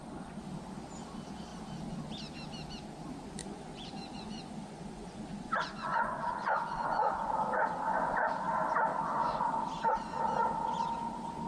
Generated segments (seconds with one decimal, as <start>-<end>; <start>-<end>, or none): 3.4-8.3; 8.9-9.6

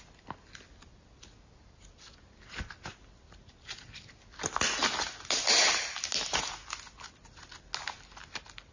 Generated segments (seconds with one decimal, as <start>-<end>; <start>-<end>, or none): none

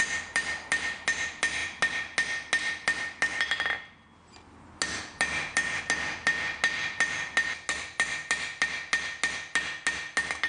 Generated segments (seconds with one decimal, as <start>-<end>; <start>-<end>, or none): none

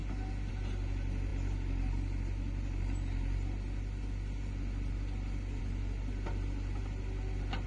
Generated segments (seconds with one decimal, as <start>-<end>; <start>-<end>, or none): none

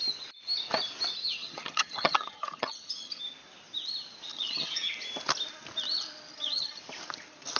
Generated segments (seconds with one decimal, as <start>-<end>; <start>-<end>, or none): 1.4-3.2; 4.3-4.9; 6.3-6.8

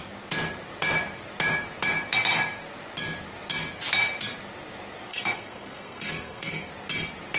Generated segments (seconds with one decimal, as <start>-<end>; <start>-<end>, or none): 5.1-6.7

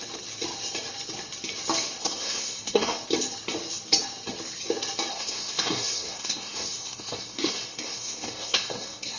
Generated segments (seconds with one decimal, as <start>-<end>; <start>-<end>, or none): 2.0-3.0; 5.1-9.2

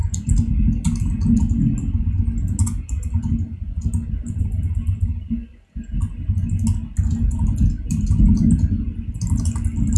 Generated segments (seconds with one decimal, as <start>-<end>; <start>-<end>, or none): none